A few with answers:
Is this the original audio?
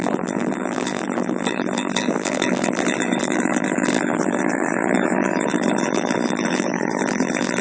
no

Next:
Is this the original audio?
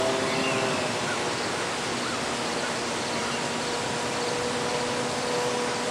yes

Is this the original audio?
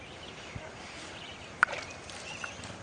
yes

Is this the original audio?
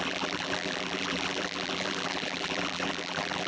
no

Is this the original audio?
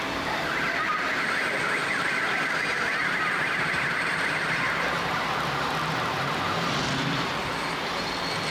yes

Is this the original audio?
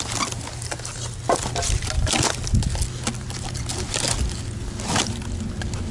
yes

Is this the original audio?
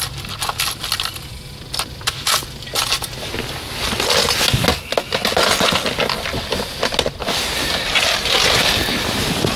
yes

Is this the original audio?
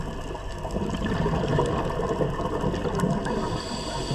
yes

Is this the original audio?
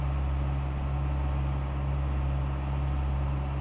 yes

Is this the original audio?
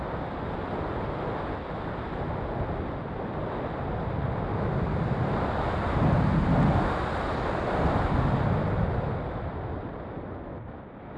yes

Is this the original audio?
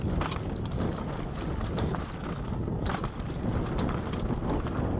yes